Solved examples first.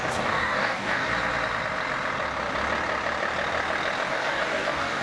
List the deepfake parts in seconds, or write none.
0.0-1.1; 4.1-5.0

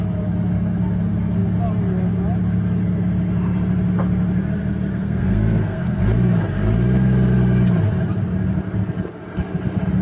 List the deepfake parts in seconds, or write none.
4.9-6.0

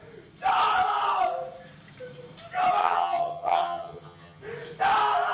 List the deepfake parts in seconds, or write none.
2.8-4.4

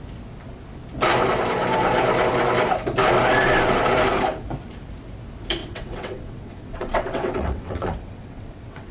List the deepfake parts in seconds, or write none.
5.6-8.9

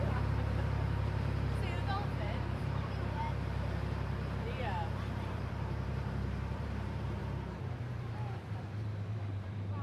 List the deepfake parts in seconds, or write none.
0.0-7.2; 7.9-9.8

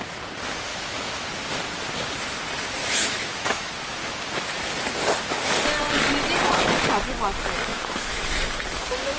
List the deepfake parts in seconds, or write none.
0.7-1.3; 2.8-3.7; 7.7-8.3